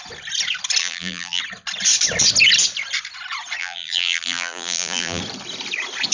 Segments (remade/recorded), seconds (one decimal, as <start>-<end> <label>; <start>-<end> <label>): 0.0-0.8 recorded; 0.8-1.4 remade; 1.4-3.6 recorded; 3.6-5.2 remade; 5.2-6.1 recorded